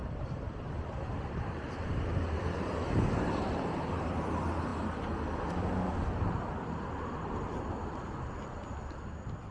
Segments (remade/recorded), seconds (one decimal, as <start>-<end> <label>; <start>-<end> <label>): 0.0-4.0 remade; 4.0-9.5 recorded